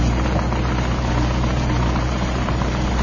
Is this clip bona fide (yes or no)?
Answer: yes